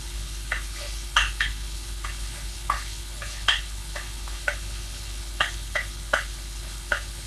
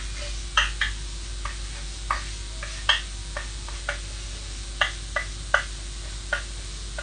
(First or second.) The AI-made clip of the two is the first